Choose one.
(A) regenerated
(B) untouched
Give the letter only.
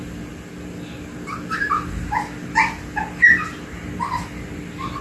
B